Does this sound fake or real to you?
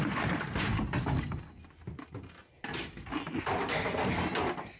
real